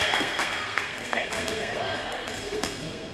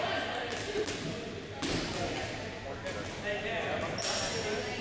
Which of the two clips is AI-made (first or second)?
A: first